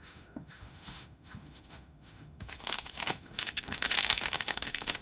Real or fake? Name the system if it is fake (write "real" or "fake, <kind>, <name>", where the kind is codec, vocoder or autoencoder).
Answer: fake, autoencoder, DAC-VAE